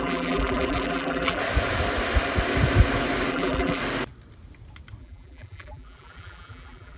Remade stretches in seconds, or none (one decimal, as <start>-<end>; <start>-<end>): 0.0-1.4; 3.3-3.8; 5.0-7.0